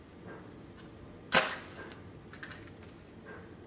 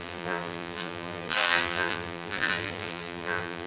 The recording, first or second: first